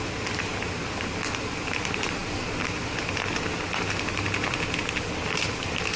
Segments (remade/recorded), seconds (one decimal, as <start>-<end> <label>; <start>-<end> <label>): 0.0-6.0 recorded